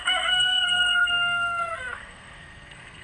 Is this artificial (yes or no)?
yes